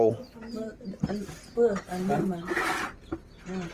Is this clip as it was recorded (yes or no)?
yes